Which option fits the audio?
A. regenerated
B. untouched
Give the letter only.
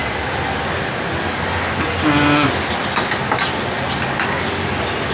B